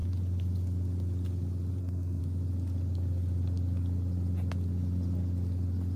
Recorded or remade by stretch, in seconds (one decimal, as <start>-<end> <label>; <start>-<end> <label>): 0.0-1.8 recorded; 1.8-2.2 remade; 2.2-6.0 recorded